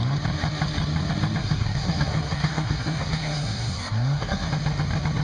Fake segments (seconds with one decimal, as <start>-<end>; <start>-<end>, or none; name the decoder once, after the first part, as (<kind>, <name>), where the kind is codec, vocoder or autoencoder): 1.4-4.5 (codec, SNAC)